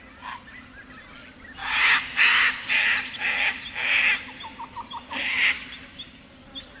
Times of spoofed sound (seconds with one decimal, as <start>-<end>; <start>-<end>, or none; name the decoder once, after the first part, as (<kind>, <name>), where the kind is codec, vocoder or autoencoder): none